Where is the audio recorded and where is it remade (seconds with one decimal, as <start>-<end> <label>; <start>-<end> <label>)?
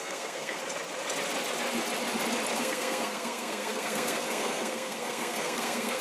0.0-0.6 remade; 0.6-2.6 recorded; 2.6-6.0 remade